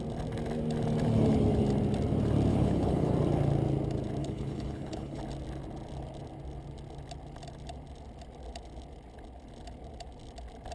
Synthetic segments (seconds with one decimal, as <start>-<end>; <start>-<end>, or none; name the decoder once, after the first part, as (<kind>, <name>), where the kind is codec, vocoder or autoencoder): 2.5-3.1 (codec, HILCodec); 4.2-5.2